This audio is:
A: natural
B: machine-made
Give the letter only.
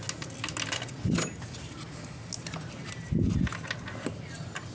A